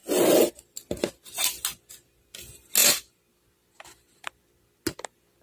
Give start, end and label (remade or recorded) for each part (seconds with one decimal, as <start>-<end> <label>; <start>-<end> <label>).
0.0-5.4 recorded